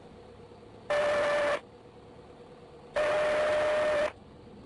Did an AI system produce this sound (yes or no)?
no